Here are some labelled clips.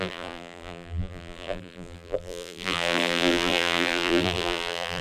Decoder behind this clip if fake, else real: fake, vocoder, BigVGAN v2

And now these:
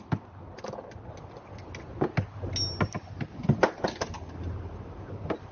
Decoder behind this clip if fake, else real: real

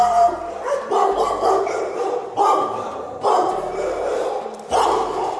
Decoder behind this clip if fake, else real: fake, vocoder, BigVGAN v2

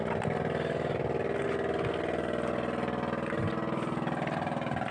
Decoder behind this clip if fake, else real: real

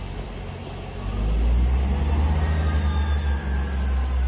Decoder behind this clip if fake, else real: real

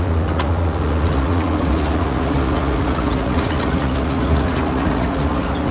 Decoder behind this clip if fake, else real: fake, vocoder, Vocos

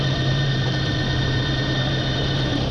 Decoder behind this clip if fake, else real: fake, vocoder, BigVGAN v2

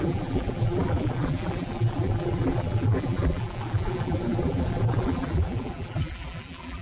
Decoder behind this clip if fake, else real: fake, vocoder, BigVGAN v2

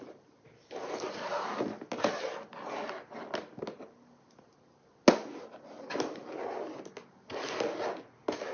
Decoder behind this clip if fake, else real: real